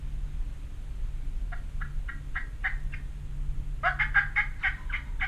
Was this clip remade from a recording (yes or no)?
no